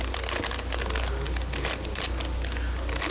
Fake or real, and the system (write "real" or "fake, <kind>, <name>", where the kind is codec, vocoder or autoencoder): real